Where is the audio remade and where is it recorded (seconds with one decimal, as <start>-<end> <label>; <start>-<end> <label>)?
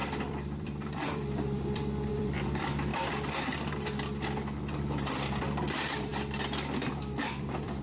0.0-2.9 remade; 2.9-5.4 recorded; 5.4-6.1 remade; 6.1-6.9 recorded; 6.9-7.8 remade